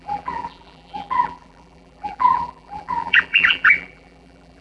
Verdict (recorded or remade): remade